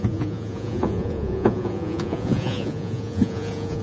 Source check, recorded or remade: remade